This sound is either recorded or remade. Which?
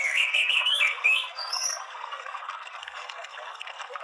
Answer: remade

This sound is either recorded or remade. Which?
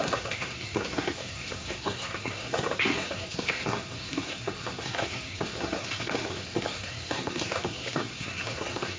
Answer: remade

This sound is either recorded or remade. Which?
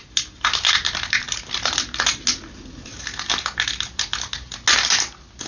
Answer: recorded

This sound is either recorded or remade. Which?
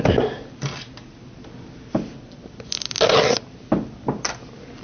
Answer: recorded